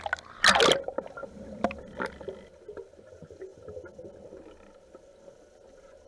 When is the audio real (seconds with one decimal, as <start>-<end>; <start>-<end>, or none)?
0.0-6.1